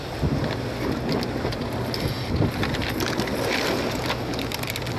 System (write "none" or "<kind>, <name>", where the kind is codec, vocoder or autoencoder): none